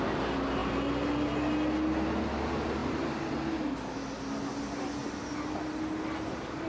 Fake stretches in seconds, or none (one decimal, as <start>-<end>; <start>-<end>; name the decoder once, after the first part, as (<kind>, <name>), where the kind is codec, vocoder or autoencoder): none